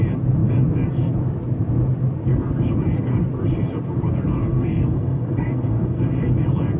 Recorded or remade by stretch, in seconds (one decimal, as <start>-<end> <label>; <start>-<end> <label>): 0.0-4.4 recorded; 4.4-6.0 remade; 6.0-6.8 recorded